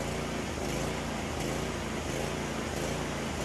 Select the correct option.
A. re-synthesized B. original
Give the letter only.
B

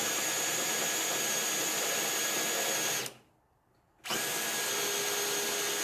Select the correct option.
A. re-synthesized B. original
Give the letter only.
B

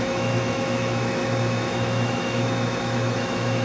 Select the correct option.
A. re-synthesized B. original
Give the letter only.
A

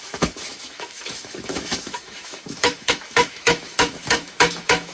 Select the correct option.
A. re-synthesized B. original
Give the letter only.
A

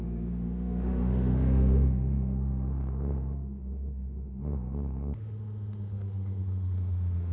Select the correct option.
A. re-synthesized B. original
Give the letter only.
A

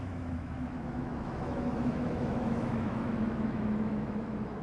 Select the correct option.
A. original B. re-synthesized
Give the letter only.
B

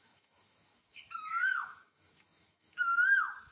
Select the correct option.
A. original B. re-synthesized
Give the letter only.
B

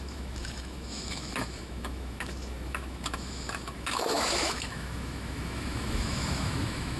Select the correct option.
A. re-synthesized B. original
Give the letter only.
A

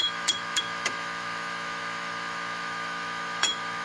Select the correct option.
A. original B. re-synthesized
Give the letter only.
B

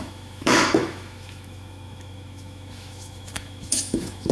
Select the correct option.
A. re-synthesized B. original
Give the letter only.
A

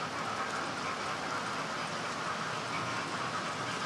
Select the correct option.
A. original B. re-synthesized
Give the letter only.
A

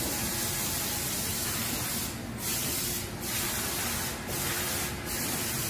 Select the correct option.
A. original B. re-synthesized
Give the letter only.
A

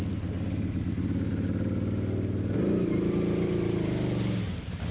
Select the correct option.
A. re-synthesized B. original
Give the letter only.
B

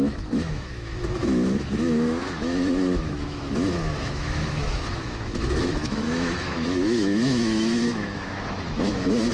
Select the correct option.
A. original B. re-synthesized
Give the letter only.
B